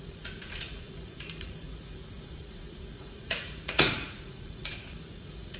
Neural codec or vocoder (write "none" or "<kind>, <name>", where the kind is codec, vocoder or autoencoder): vocoder, Vocos